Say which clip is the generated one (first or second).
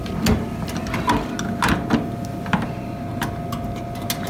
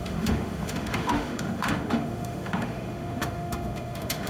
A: second